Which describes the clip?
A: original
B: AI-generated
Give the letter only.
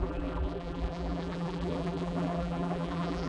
B